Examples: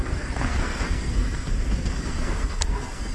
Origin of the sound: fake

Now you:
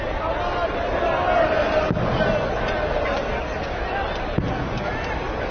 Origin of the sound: real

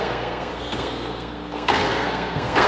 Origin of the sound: fake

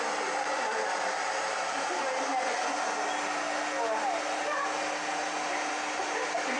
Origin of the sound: real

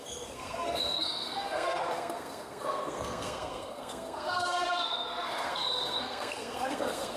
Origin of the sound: fake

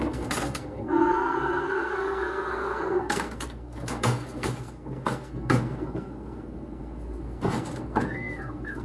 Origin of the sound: fake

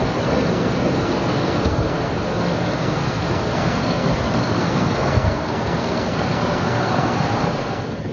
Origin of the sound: fake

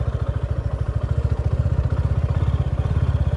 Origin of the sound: real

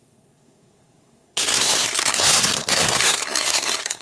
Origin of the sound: fake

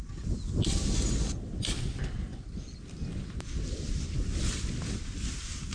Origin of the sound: real